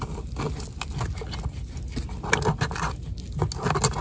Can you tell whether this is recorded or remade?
recorded